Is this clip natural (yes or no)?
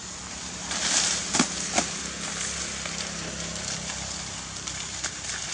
yes